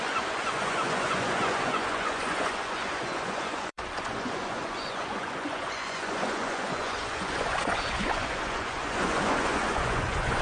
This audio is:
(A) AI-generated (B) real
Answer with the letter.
A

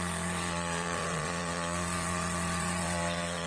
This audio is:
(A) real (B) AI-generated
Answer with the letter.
B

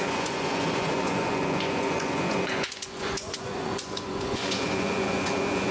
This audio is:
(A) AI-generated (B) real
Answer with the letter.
A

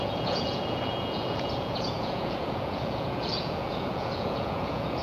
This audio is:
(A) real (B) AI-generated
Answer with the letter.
B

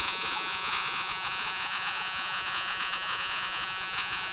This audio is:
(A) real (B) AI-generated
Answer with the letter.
B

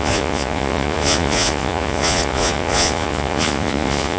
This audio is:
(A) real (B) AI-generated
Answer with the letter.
B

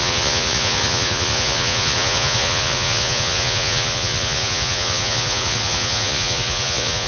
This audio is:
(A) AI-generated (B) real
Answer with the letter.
A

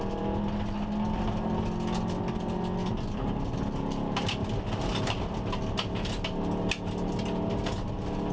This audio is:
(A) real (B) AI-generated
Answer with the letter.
A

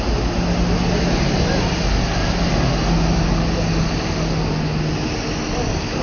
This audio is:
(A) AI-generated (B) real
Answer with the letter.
B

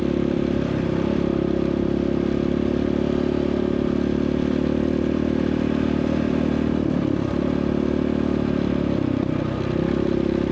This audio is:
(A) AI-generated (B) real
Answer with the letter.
B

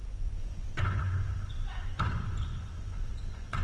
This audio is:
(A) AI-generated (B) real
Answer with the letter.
A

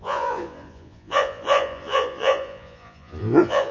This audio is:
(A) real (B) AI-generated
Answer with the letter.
B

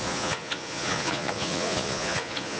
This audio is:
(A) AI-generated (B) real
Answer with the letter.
A